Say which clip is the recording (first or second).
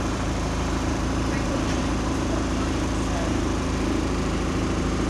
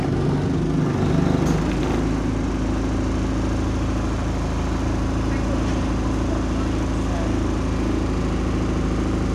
second